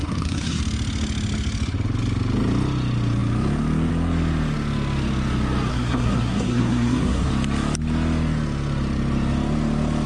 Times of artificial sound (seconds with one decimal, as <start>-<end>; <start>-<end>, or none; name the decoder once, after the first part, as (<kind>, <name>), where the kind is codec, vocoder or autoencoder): 0.0-0.6 (codec, SNAC); 5.7-7.3